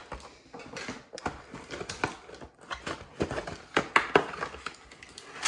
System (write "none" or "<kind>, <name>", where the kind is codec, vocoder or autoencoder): none